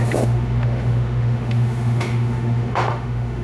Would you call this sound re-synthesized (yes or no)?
yes